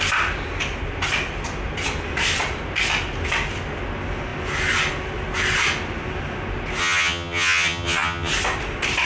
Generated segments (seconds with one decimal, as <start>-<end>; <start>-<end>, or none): 6.8-8.3